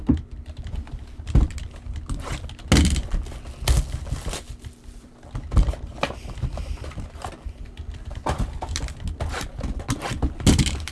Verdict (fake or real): real